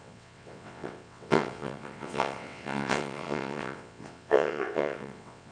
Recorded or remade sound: remade